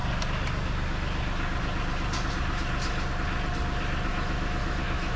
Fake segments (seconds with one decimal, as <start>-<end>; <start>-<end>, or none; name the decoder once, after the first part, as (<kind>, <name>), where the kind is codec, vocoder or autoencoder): 4.1-5.2 (autoencoder, DAC-VAE)